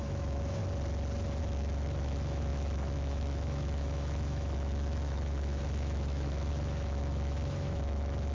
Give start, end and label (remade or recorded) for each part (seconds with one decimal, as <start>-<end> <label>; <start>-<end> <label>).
0.0-0.6 remade; 0.6-1.4 recorded; 1.4-8.3 remade